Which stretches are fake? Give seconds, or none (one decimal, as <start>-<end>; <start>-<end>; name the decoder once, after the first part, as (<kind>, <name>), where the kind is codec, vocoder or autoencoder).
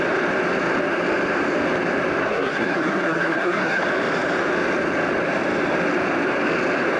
2.2-3.8 (codec, SNAC)